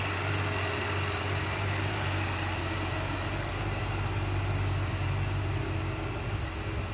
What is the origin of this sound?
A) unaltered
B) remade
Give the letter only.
A